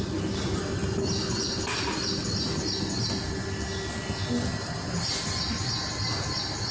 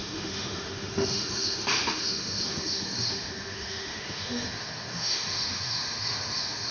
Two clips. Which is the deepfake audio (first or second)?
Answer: second